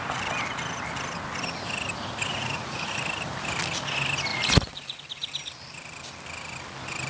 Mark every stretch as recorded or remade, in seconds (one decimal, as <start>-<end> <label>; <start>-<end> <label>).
0.0-2.3 recorded; 2.3-3.0 remade; 3.0-4.3 recorded; 4.3-5.0 remade; 5.0-7.1 recorded